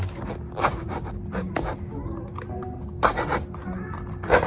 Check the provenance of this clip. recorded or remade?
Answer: recorded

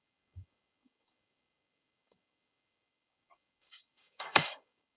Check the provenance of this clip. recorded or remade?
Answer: remade